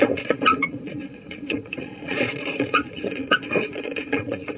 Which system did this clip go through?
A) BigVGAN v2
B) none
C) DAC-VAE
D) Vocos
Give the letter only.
D